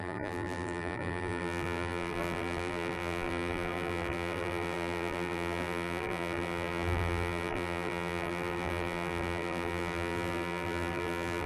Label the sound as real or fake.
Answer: fake